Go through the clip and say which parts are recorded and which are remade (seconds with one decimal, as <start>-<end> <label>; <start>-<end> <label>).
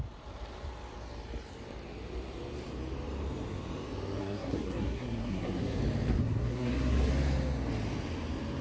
0.0-4.2 recorded; 4.2-5.8 remade; 5.8-6.2 recorded; 6.2-7.1 remade; 7.1-8.6 recorded